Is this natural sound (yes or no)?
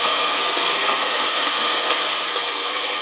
no